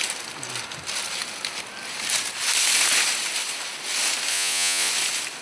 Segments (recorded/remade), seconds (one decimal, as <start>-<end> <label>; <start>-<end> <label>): 0.0-4.3 recorded; 4.3-4.9 remade; 4.9-5.4 recorded